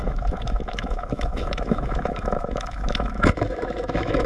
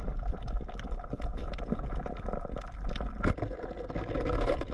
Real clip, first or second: second